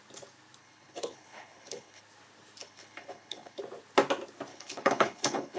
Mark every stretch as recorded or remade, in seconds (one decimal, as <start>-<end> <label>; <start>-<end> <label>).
0.0-0.6 recorded; 0.6-2.0 remade; 2.0-2.6 recorded; 2.6-3.6 remade; 3.6-4.5 recorded; 4.5-5.6 remade